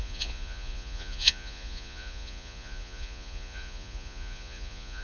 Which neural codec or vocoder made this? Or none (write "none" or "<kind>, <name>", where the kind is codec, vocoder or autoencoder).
vocoder, Vocos